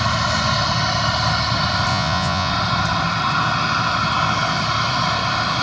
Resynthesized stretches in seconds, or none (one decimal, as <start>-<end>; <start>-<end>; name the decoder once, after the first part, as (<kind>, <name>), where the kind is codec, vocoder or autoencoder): 1.9-2.5 (vocoder, Vocos)